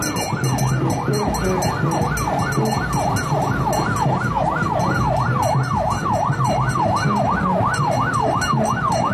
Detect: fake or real real